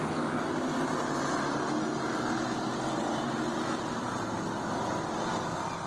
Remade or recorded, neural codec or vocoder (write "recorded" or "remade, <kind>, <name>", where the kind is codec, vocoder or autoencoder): recorded